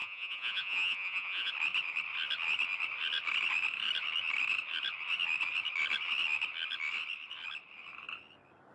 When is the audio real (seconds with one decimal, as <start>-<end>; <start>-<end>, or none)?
1.5-8.7